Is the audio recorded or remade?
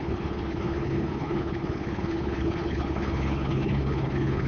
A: remade